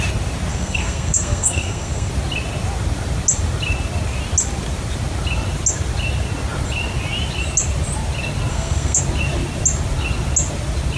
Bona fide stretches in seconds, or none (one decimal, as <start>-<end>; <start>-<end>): 0.0-0.5; 2.1-8.5; 9.0-11.0